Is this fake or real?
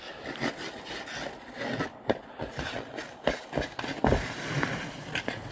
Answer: real